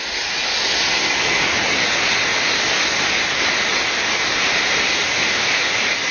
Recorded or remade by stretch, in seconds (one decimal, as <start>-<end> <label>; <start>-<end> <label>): 0.0-6.1 recorded